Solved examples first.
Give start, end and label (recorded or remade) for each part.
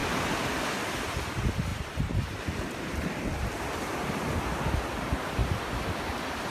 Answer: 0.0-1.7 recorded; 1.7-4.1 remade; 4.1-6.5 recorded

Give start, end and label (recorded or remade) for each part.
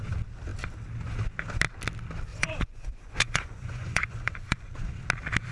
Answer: 0.0-2.3 recorded; 2.3-4.9 remade; 4.9-5.5 recorded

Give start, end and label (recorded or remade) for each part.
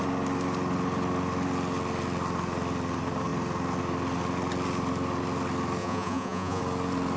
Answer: 0.0-5.8 recorded; 5.8-6.6 remade; 6.6-7.2 recorded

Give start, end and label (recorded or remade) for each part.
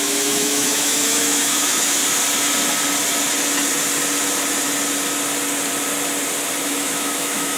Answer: 0.0-2.0 remade; 2.0-6.6 recorded; 6.6-7.6 remade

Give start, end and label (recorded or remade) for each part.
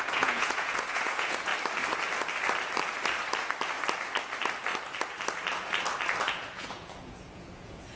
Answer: 0.0-1.5 remade; 1.5-6.3 recorded; 6.3-8.0 remade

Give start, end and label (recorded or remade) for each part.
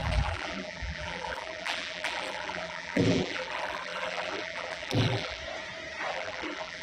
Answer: 0.0-5.4 remade; 5.4-6.1 recorded; 6.1-6.8 remade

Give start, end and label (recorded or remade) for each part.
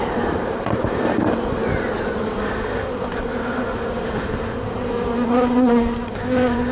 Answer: 0.0-1.6 remade; 1.6-2.2 recorded; 2.2-6.7 remade